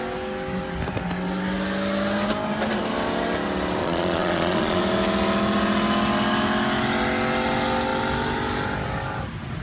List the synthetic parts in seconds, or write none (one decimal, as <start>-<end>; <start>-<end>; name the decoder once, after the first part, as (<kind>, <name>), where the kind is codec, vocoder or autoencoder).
3.8-4.8 (vocoder, Vocos)